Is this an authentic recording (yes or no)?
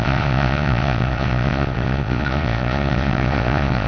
no